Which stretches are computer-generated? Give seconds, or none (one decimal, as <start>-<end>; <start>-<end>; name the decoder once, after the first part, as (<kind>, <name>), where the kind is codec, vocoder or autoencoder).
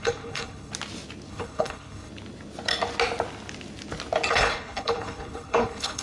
0.0-0.7 (codec, HILCodec); 1.3-2.1; 4.3-6.0